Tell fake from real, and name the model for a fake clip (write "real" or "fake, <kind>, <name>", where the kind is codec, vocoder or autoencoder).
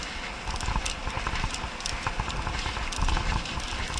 real